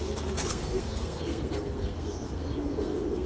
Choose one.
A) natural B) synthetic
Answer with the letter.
B